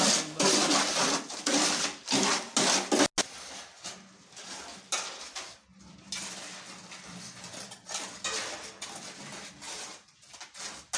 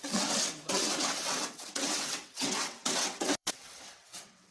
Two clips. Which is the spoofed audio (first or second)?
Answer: second